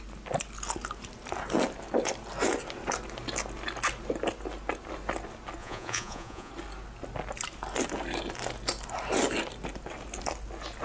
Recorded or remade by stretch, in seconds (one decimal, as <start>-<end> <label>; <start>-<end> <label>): 0.0-5.6 recorded; 5.6-6.5 remade; 6.5-10.8 recorded